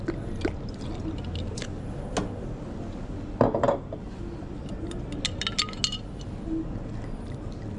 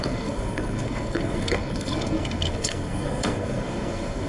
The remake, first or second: second